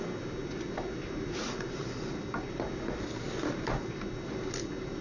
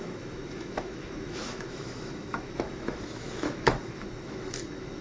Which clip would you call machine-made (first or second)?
second